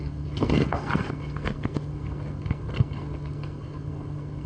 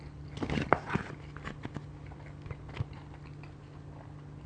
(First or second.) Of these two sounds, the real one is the second